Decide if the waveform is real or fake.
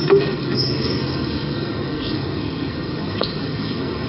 fake